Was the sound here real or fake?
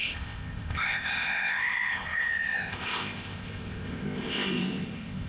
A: fake